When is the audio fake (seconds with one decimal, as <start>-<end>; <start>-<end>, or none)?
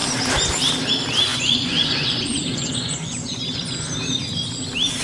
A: 1.3-3.9